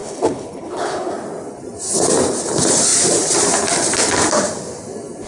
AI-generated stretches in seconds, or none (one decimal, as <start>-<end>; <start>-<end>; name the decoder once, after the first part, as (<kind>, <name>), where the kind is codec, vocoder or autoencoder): 0.0-1.1 (codec, HILCodec)